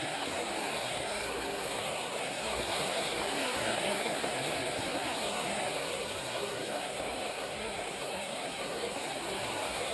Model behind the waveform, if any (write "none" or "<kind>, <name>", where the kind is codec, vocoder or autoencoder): codec, SNAC